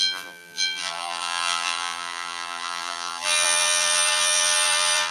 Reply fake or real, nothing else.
fake